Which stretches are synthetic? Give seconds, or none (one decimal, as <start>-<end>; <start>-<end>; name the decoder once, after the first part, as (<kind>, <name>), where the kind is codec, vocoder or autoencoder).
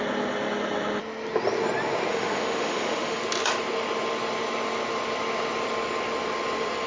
2.1-3.2 (autoencoder, DAC-VAE)